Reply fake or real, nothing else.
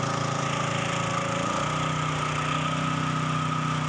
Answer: real